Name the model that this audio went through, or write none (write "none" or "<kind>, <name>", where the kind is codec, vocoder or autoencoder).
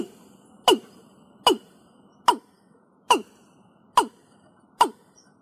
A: none